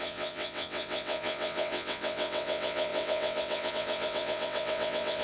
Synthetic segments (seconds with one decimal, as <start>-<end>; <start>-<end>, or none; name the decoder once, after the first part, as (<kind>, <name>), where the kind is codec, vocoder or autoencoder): 0.0-5.2 (vocoder, WaveNeXt)